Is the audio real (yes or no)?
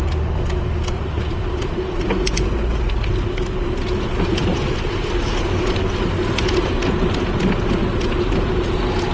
yes